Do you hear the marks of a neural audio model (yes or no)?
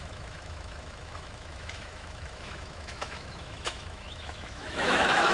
yes